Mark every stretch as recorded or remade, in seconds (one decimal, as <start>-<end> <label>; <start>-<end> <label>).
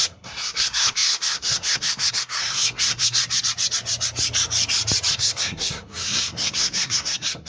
0.0-3.2 remade; 3.2-5.1 recorded; 5.1-7.5 remade